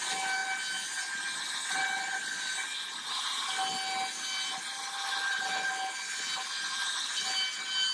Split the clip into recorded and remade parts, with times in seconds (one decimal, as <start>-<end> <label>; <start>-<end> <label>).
0.0-7.9 recorded